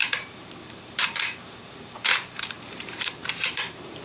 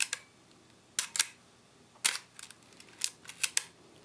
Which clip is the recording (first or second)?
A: second